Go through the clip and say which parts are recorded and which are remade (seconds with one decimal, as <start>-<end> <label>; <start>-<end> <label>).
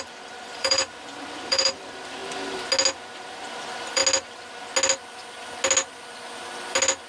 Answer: 0.0-2.2 remade; 2.2-3.5 recorded; 3.5-4.0 remade; 4.0-7.1 recorded